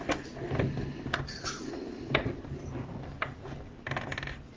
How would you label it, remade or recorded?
recorded